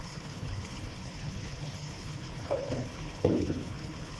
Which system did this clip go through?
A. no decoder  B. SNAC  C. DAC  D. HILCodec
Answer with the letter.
D